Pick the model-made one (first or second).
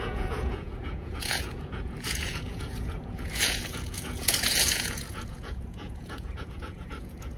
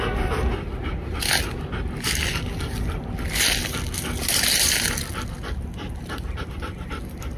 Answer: first